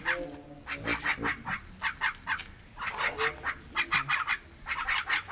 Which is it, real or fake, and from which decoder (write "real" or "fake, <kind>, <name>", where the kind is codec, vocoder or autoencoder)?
real